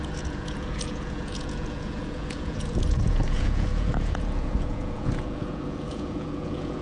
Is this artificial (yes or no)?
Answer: yes